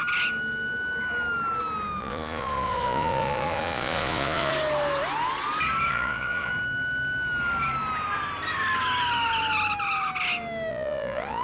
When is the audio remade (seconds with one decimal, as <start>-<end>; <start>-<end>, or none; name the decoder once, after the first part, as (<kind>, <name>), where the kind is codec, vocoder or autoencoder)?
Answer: 2.0-4.5 (vocoder, Vocos); 5.9-6.5; 10.7-11.4